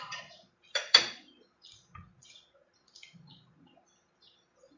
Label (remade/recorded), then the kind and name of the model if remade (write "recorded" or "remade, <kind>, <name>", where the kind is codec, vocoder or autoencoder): remade, vocoder, Vocos